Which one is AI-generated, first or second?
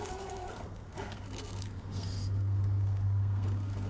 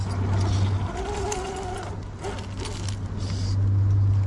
first